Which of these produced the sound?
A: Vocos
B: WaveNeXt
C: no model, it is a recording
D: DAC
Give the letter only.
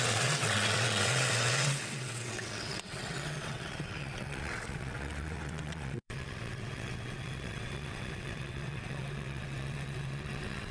B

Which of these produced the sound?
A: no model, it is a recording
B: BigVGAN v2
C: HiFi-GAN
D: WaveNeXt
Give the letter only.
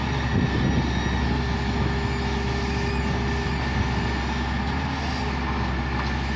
A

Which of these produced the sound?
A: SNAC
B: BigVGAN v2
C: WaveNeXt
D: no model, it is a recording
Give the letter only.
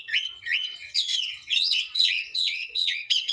C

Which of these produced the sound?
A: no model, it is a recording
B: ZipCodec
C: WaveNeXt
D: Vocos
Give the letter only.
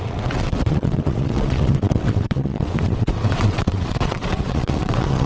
C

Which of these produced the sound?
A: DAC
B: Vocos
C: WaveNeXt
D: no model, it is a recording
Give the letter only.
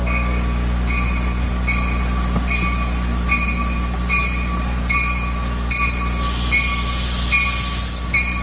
D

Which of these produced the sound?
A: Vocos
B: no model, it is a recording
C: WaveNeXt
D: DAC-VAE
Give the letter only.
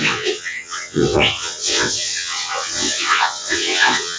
C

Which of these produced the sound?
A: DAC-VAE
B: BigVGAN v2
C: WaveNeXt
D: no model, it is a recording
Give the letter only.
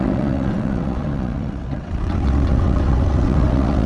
C